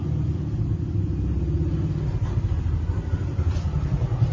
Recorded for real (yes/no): yes